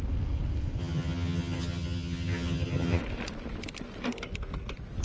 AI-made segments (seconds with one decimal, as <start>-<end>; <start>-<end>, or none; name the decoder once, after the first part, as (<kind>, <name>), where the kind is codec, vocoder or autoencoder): 0.8-3.0 (vocoder, HiFi-GAN)